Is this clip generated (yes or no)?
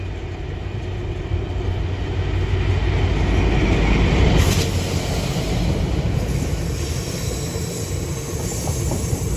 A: no